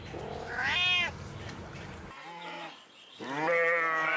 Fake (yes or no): no